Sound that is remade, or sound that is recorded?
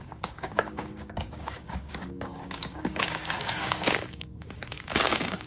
remade